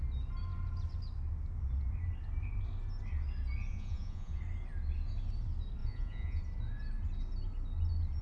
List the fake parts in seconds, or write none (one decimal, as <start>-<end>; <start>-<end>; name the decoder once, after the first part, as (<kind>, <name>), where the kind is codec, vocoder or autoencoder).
3.7-4.4 (vocoder, Vocos); 5.8-6.4